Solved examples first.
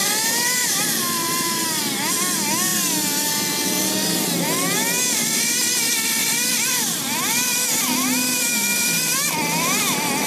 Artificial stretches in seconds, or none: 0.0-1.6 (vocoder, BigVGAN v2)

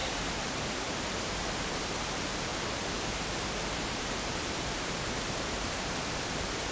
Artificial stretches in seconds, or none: 0.0-1.5 (vocoder, BigVGAN v2); 3.6-6.7

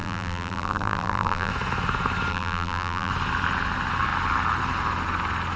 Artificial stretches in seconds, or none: 0.0-1.5 (vocoder, BigVGAN v2); 2.3-3.1

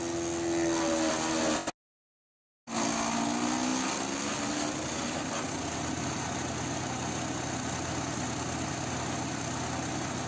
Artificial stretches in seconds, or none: none

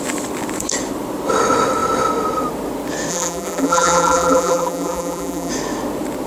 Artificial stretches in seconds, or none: 3.1-5.5 (vocoder, BigVGAN v2)

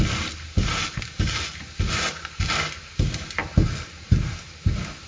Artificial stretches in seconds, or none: 0.0-0.7 (vocoder, BigVGAN v2); 3.4-4.0

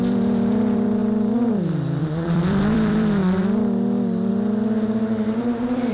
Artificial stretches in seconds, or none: 0.0-1.0 (vocoder, BigVGAN v2); 1.5-3.2; 4.3-5.9